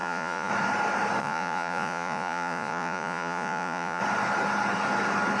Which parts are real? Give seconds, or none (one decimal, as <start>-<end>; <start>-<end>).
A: 0.5-1.2; 4.0-5.4